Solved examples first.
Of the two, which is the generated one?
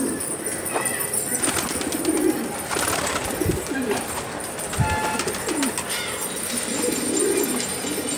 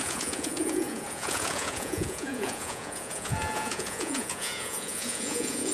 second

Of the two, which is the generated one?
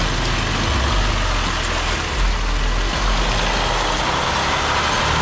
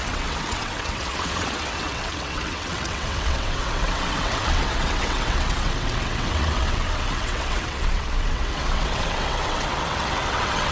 second